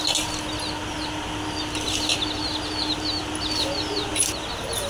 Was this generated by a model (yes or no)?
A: no